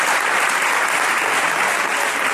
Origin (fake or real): real